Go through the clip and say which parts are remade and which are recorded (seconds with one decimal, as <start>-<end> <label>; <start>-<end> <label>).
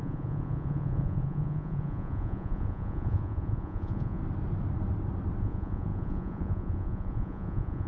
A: 0.0-4.2 remade; 4.2-5.4 recorded; 5.4-7.9 remade